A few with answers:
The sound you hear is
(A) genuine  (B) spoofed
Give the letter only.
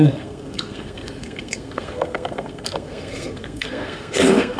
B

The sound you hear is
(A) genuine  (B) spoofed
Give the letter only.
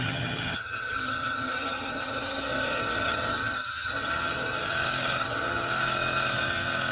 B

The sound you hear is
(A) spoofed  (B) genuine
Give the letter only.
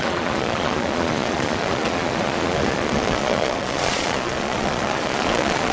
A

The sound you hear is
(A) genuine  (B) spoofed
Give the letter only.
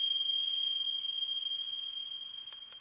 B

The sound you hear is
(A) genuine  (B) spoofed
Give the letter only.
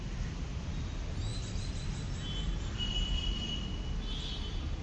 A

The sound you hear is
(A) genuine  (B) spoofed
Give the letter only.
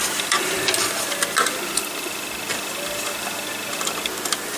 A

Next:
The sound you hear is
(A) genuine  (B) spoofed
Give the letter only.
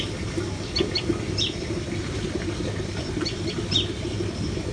A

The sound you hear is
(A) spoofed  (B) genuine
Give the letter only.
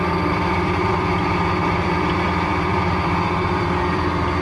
A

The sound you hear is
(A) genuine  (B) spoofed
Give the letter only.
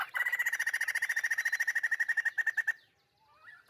A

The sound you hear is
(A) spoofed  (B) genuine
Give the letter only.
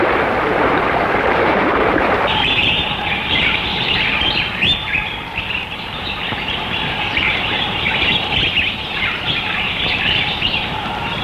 A